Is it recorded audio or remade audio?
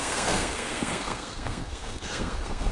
remade